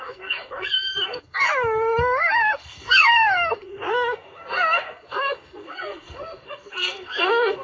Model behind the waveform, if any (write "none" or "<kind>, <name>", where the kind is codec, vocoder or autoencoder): codec, SNAC